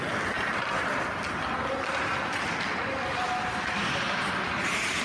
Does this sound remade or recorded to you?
recorded